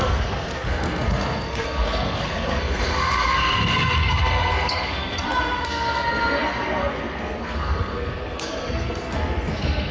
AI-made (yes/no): yes